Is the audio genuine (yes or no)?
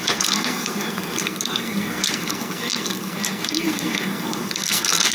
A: no